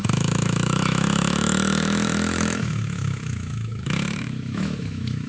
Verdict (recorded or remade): remade